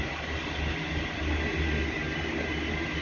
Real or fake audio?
real